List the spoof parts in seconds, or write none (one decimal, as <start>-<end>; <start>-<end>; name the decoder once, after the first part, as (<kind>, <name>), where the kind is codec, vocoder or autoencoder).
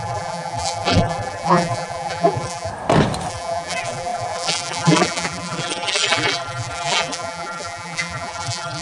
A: 0.0-2.7 (vocoder, BigVGAN v2); 3.3-8.8